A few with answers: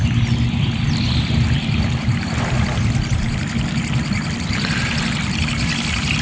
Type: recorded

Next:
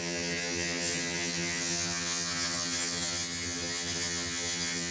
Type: remade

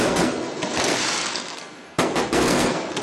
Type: remade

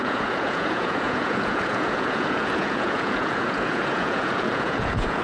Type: remade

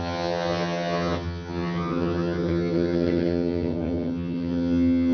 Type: remade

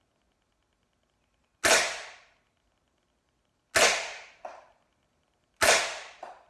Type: recorded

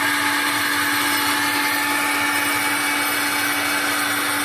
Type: recorded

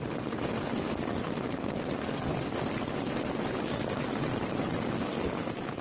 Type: recorded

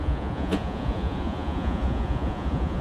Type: remade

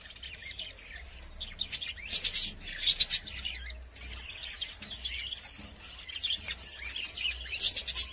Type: recorded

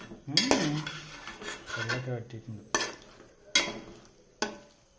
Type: recorded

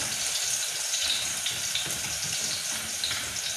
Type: recorded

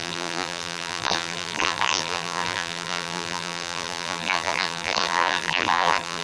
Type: remade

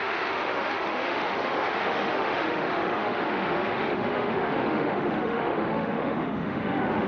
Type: remade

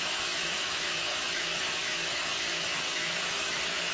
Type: remade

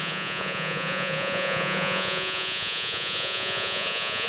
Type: remade